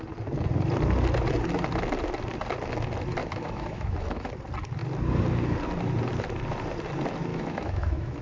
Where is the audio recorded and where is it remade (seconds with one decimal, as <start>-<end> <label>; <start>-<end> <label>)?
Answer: 0.0-3.2 recorded; 3.2-4.3 remade; 4.3-7.3 recorded; 7.3-8.2 remade